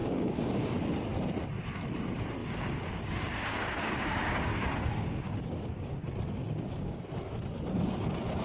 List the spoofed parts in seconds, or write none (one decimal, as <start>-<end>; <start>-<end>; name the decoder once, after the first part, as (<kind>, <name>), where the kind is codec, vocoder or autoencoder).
0.0-0.7 (codec, DAC); 2.4-6.0; 6.4-7.0